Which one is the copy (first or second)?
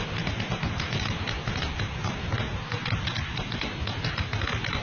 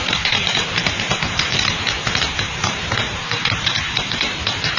second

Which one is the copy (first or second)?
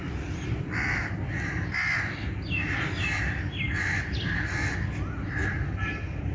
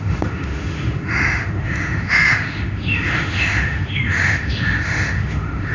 second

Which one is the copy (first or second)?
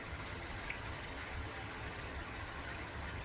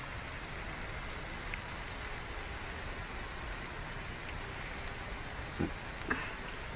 first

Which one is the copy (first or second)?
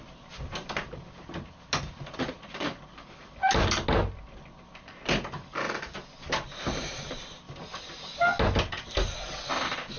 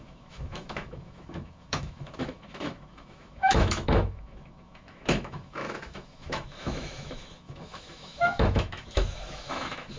second